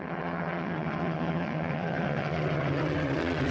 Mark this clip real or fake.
fake